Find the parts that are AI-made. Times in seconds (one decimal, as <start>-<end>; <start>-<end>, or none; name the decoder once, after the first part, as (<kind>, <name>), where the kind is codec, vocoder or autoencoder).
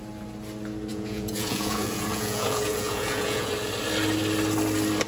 0.9-3.5 (vocoder, Vocos)